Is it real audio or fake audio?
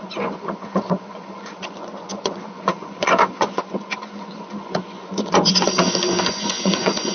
fake